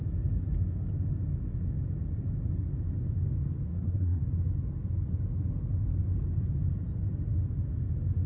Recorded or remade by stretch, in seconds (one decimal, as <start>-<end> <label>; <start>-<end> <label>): 0.0-3.7 recorded; 3.7-4.2 remade; 4.2-8.3 recorded